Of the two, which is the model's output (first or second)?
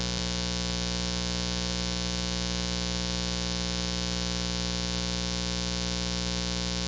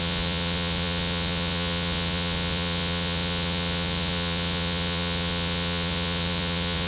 second